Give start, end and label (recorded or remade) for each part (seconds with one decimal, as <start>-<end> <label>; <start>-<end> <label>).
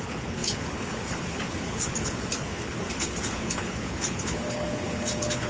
0.0-5.5 remade